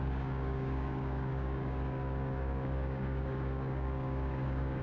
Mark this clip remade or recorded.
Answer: remade